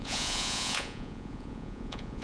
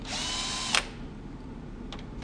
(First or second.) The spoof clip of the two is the first